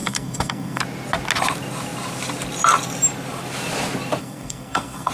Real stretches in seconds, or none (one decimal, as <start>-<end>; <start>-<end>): 0.8-4.2